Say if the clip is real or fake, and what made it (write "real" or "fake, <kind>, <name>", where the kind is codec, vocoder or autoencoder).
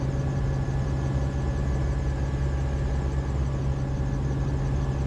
real